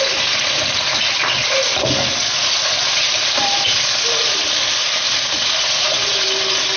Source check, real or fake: real